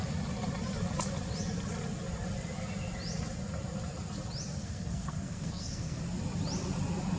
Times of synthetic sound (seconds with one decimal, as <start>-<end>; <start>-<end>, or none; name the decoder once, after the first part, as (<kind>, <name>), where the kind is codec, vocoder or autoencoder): 4.6-6.0 (codec, SNAC)